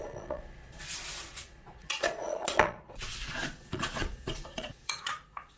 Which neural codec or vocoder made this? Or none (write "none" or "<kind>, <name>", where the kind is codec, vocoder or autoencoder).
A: vocoder, Vocos